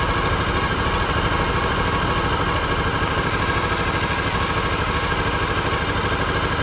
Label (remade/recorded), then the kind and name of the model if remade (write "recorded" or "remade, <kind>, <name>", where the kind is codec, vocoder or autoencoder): recorded